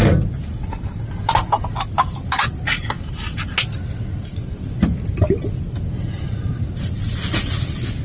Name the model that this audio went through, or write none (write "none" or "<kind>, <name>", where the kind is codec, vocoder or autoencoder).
none